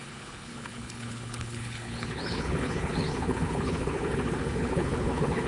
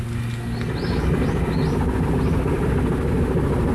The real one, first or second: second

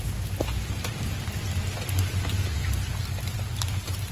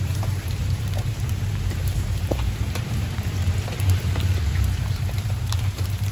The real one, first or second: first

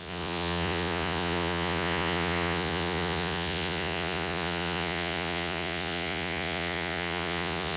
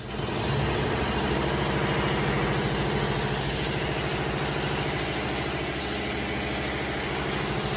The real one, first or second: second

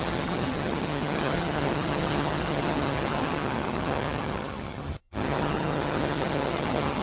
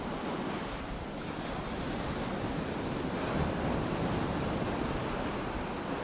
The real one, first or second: second